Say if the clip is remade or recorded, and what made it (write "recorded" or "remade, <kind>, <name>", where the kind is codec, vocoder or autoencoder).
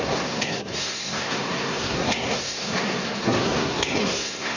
remade, codec, SNAC